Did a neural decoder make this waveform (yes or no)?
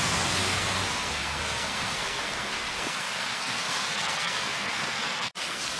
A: yes